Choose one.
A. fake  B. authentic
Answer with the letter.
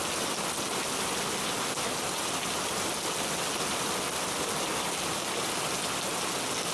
B